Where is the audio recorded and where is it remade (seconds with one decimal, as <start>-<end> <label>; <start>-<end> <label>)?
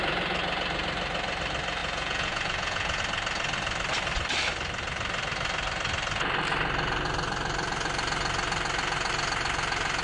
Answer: 0.0-1.8 recorded; 1.8-3.0 remade; 3.0-10.0 recorded